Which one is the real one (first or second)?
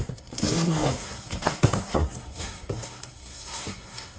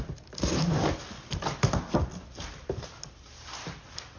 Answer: second